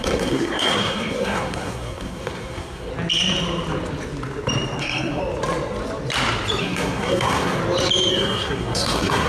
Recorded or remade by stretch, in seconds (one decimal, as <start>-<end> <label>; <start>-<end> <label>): 0.0-2.9 remade; 2.9-4.8 recorded; 4.8-5.2 remade; 5.2-6.6 recorded; 6.6-7.6 remade; 7.6-8.1 recorded; 8.1-9.3 remade